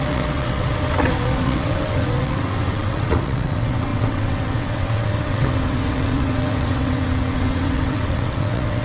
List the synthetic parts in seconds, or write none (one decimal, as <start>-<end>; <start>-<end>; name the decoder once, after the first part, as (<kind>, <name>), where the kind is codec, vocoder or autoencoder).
0.0-8.8 (vocoder, WaveNeXt)